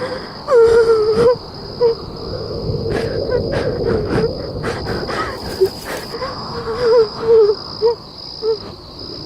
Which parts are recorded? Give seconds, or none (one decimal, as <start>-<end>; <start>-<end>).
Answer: 0.0-6.2; 7.5-9.3